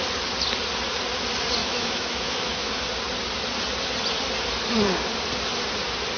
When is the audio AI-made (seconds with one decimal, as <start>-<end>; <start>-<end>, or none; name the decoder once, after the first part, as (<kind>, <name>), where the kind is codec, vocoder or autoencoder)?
1.6-2.7 (autoencoder, DAC-VAE)